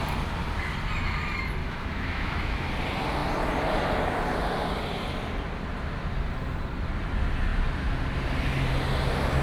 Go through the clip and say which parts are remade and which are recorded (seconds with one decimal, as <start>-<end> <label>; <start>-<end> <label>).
0.0-1.6 recorded; 1.6-2.7 remade; 2.7-9.4 recorded

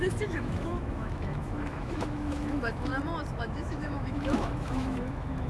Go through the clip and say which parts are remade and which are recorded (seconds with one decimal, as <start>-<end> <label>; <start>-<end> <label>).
0.0-2.9 remade; 2.9-3.4 recorded; 3.4-5.5 remade

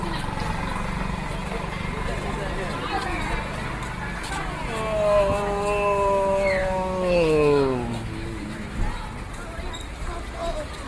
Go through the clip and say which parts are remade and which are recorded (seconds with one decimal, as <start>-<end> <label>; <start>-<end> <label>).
0.0-6.6 recorded; 6.6-8.8 remade; 8.8-10.9 recorded

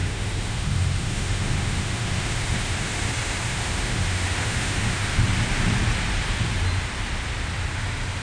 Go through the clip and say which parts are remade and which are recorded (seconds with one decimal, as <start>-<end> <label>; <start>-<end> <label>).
0.0-5.1 remade; 5.1-7.7 recorded; 7.7-8.2 remade

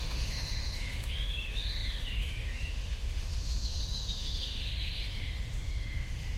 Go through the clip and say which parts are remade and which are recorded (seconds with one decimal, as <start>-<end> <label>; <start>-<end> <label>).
0.0-6.4 remade

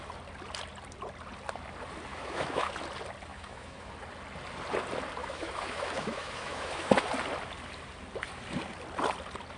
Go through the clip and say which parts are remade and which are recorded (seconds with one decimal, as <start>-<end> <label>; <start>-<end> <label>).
0.0-2.1 recorded; 2.1-2.7 remade; 2.7-3.3 recorded; 3.3-3.9 remade; 3.9-5.2 recorded; 5.2-7.1 remade; 7.1-9.6 recorded